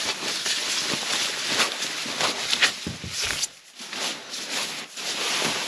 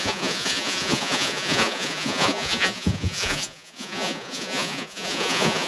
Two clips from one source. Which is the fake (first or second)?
second